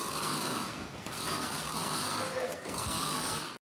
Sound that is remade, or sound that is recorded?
remade